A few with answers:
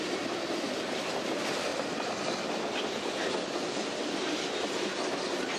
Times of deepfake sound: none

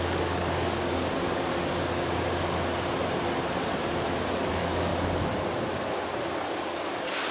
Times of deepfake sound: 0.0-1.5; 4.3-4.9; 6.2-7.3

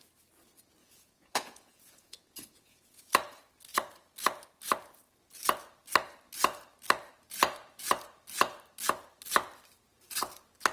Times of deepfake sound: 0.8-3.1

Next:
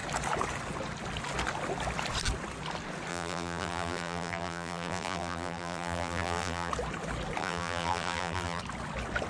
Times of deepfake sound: 3.1-6.7; 7.4-8.6